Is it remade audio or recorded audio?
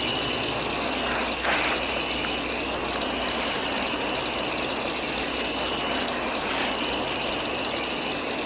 recorded